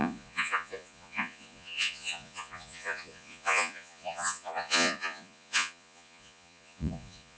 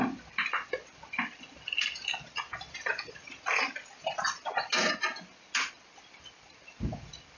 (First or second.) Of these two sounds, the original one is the second